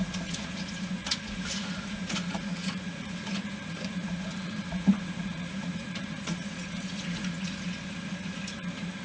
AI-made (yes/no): yes